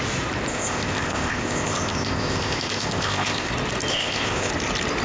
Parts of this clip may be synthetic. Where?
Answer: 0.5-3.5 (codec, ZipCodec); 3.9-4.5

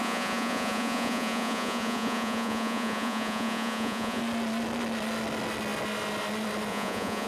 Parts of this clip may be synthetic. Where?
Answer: 0.0-4.2 (vocoder, Vocos); 6.7-7.3

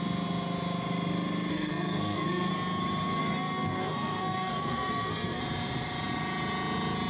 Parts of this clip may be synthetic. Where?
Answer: 1.5-2.5 (codec, SNAC); 3.2-5.4

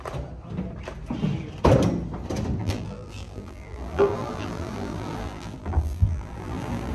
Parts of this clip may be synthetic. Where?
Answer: 2.6-6.9 (vocoder, BigVGAN v2)